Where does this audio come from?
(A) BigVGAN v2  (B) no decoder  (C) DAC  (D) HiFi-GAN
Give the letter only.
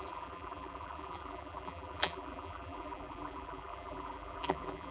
A